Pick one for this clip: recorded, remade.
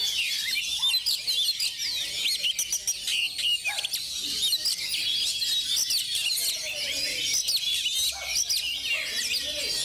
recorded